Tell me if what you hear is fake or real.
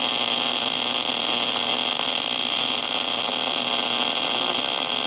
real